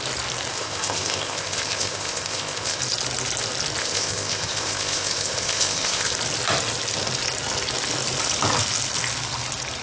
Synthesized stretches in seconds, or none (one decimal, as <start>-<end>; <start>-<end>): 0.5-2.8; 3.8-6.1